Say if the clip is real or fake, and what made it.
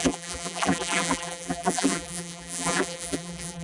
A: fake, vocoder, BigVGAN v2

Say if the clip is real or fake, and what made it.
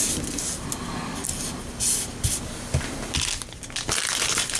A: real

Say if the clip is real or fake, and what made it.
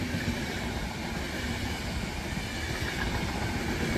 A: real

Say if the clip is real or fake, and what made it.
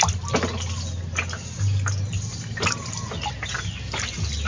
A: real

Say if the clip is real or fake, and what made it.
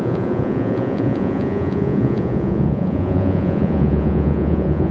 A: fake, vocoder, Vocos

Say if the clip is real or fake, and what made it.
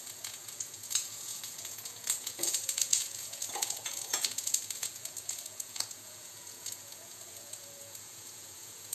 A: fake, vocoder, Vocos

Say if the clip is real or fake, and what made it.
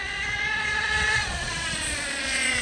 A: fake, vocoder, Vocos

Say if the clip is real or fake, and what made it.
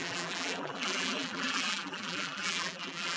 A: fake, vocoder, BigVGAN v2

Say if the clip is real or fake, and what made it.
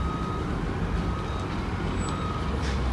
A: real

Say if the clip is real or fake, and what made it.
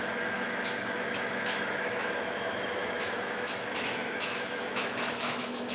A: fake, autoencoder, DAC-VAE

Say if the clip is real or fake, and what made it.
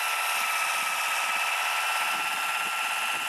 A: real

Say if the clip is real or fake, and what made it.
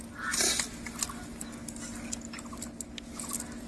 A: real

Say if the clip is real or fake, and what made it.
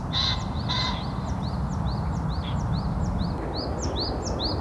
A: real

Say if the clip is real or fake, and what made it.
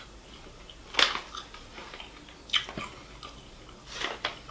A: real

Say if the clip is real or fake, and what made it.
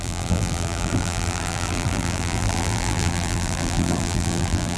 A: fake, vocoder, BigVGAN v2